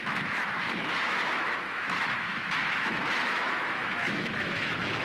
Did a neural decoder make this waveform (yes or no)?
yes